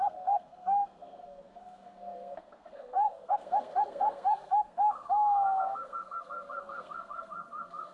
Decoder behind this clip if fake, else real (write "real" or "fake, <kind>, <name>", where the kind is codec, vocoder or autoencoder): fake, codec, SNAC